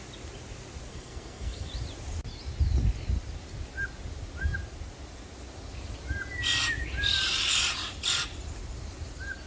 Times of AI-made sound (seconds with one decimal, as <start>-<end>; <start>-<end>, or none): 0.9-1.7